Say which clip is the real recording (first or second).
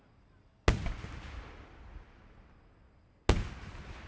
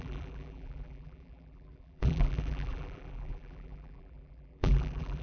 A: first